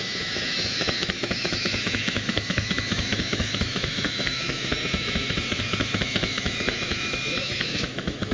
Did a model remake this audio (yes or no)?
yes